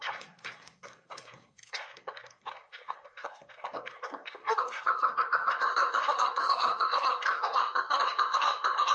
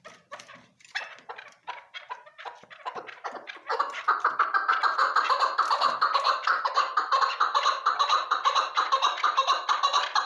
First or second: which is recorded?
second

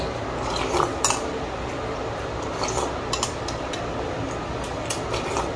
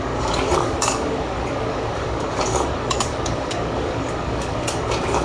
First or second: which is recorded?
first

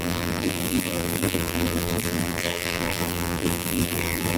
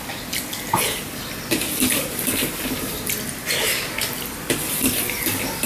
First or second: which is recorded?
second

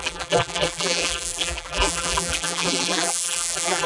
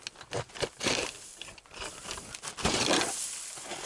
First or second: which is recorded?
second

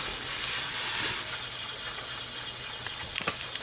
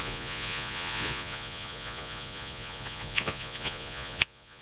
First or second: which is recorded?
first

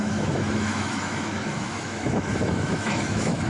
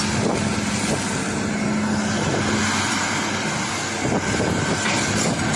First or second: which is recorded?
second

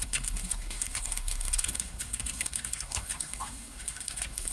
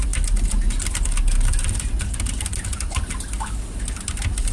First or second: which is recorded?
second